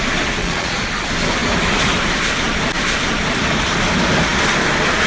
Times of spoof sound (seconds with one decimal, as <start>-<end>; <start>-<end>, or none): 0.4-0.9